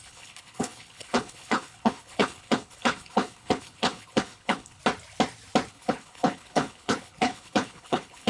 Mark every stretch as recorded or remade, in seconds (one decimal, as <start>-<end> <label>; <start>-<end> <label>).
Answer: 0.0-4.8 remade; 4.8-5.7 recorded; 5.7-8.3 remade